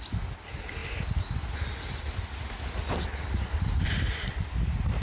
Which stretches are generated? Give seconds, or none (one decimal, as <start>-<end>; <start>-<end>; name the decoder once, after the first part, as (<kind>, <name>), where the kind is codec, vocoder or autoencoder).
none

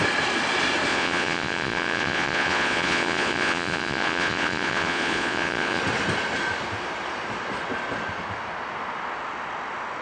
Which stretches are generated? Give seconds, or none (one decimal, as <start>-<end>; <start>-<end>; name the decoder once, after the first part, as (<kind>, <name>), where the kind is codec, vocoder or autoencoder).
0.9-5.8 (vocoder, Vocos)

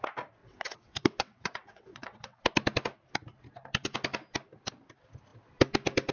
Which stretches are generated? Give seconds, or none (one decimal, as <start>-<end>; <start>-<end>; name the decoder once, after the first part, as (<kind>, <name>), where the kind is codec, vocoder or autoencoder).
0.4-2.4 (vocoder, WaveNeXt)